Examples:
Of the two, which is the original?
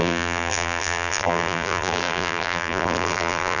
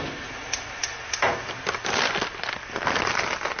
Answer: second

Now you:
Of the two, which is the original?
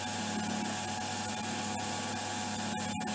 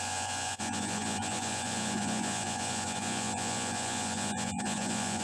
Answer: first